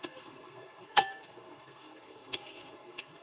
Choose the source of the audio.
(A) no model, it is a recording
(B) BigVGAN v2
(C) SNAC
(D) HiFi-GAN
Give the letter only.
C